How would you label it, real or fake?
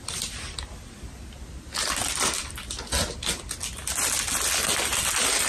real